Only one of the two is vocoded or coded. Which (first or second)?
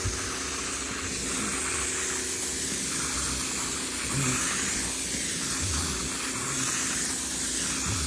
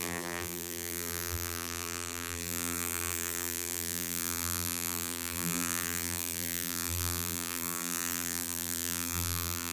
second